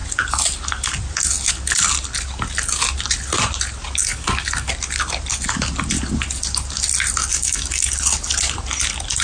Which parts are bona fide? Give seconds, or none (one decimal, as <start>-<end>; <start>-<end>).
0.0-4.0; 4.7-7.3; 7.9-9.2